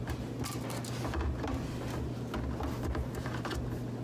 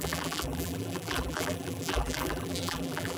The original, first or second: first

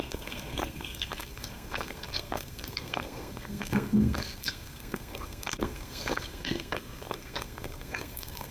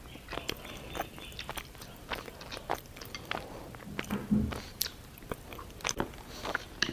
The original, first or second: second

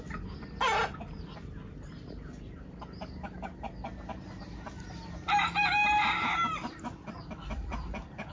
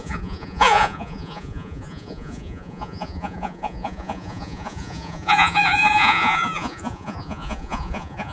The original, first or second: first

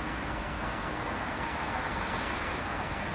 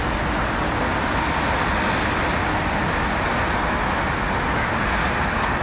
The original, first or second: second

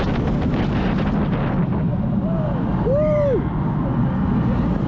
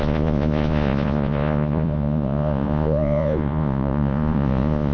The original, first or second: first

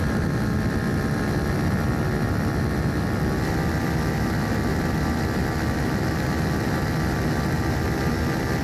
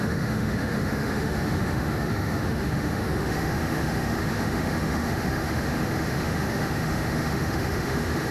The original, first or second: first